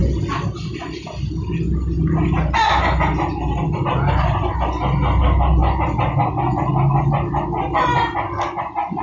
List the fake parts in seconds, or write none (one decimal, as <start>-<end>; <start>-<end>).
none